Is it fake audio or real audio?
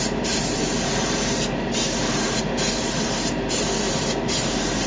fake